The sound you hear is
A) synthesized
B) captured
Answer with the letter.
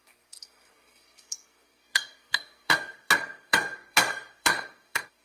A